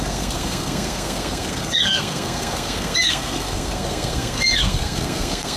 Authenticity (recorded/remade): remade